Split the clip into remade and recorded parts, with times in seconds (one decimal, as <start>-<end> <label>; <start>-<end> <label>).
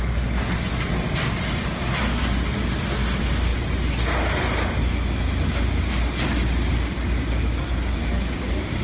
0.0-8.8 recorded